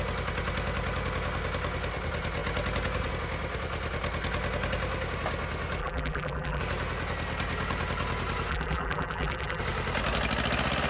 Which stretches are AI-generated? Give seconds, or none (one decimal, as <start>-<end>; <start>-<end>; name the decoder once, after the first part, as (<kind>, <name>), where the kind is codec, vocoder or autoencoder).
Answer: 5.8-6.6 (vocoder, BigVGAN v2); 8.5-9.6